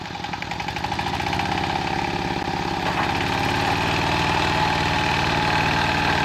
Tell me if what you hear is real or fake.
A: real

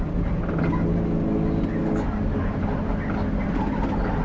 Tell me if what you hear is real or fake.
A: real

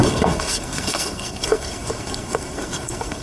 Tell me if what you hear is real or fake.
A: fake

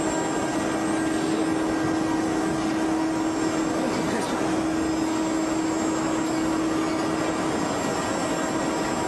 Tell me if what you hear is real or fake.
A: real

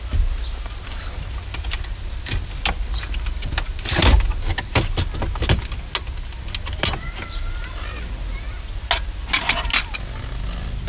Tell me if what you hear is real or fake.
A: real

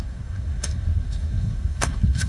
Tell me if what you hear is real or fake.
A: fake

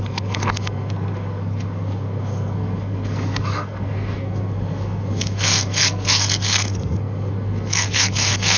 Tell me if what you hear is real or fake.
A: fake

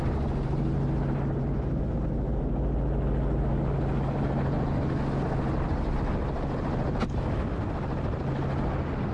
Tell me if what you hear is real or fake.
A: real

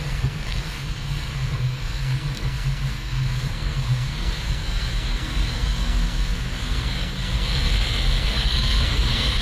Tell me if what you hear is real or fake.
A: fake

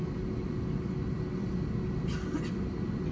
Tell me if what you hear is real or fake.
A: real